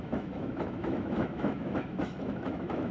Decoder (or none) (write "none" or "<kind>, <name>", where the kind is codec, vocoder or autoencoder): autoencoder, DAC-VAE